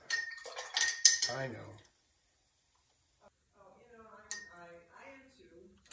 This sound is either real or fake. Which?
real